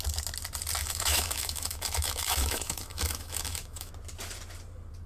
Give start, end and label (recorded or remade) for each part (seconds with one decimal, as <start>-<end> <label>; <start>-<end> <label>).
0.0-0.8 recorded; 0.8-3.9 remade; 3.9-5.1 recorded